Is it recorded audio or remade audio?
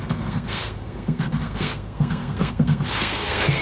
remade